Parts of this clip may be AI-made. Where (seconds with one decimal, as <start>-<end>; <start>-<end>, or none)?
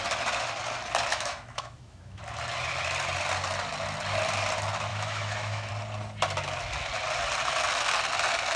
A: 1.1-2.2; 4.9-5.7